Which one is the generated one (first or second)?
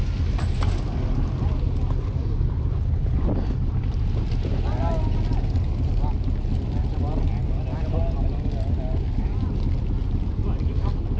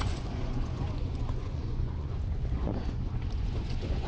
second